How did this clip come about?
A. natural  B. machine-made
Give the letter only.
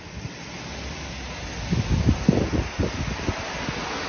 A